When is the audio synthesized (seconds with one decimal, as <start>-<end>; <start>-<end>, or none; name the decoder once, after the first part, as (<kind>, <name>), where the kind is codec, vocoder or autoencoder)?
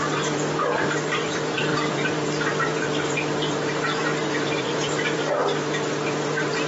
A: 0.0-5.2 (vocoder, BigVGAN v2); 6.0-6.7